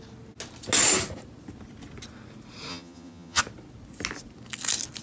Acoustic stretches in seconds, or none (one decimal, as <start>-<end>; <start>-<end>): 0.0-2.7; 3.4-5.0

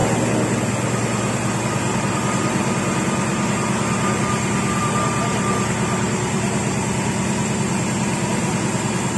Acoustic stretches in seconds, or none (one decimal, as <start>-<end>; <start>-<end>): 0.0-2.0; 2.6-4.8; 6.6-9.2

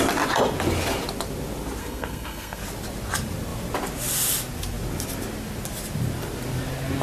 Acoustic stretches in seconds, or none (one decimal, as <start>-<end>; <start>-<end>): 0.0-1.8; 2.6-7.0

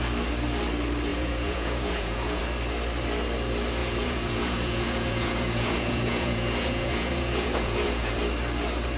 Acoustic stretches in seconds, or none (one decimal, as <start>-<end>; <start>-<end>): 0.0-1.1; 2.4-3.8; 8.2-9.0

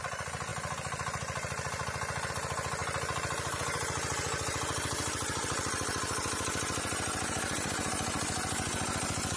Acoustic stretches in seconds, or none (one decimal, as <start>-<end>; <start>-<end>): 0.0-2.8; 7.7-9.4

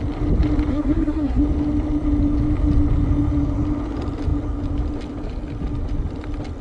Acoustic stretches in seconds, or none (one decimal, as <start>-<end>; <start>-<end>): 0.0-0.7; 1.4-6.6

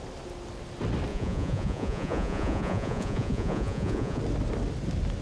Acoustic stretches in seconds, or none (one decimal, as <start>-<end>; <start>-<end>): 0.0-1.1; 4.2-5.2